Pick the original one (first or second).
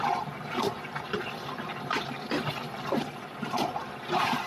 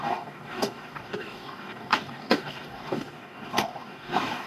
first